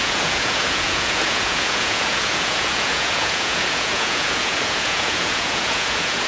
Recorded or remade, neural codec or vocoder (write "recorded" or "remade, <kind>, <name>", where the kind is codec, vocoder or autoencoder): remade, vocoder, Vocos